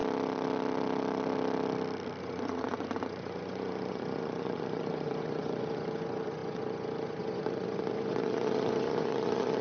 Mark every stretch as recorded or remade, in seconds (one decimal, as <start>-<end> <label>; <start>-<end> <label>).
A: 0.0-2.2 recorded; 2.2-9.6 remade